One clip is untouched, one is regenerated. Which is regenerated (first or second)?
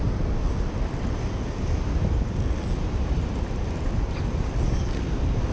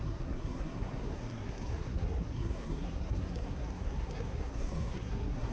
second